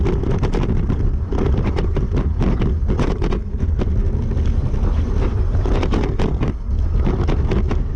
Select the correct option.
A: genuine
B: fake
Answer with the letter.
A